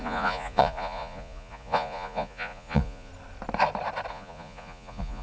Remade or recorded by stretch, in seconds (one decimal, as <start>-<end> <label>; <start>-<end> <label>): 0.0-3.1 remade; 3.1-4.1 recorded; 4.1-5.2 remade